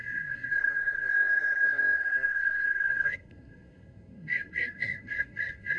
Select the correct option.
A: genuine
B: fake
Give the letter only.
B